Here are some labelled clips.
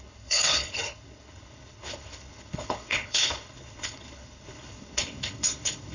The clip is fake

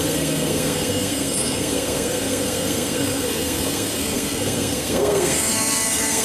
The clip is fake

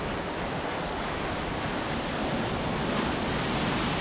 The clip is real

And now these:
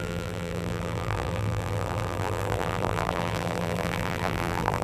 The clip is fake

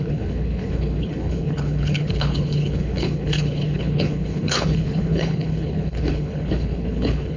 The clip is fake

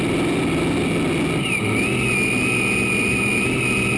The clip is real